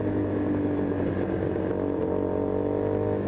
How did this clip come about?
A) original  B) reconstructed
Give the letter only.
A